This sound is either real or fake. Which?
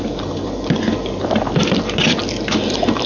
real